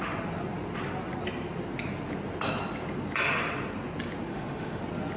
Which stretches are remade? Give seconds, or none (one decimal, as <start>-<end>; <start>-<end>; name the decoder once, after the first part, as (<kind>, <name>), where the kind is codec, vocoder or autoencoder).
4.3-4.8 (autoencoder, DAC-VAE)